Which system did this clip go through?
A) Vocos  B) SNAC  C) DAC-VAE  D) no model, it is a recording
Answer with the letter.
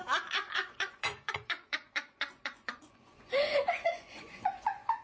A